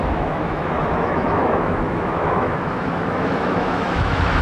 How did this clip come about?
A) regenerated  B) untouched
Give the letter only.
A